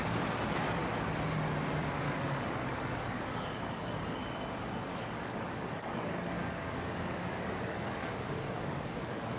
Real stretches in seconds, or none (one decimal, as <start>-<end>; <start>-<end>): 0.8-1.9; 4.2-4.9